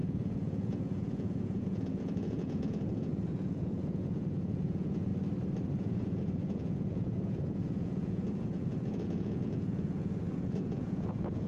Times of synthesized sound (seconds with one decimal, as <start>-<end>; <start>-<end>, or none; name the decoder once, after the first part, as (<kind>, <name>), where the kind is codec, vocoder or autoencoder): 0.0-5.1 (vocoder, Vocos); 5.8-11.5

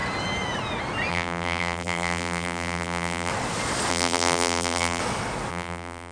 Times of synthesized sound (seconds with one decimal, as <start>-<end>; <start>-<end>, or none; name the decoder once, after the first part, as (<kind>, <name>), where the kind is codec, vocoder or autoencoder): 1.1-3.3 (vocoder, BigVGAN v2); 3.9-5.0; 5.5-6.1

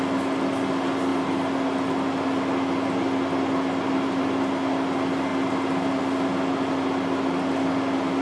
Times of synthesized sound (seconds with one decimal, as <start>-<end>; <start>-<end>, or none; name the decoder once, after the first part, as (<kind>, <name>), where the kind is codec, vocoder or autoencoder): none

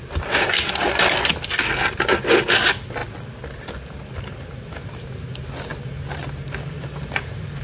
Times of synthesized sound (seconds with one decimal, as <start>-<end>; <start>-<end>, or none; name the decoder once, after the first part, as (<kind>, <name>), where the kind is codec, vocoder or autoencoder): none